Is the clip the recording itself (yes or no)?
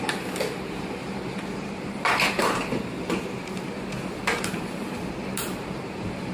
no